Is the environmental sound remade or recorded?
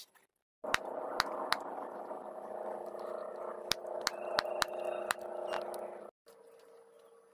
recorded